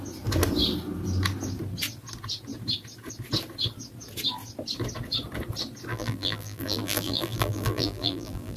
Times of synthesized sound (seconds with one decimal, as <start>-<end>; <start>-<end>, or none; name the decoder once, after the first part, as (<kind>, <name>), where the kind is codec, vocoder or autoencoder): 5.9-8.6 (vocoder, BigVGAN v2)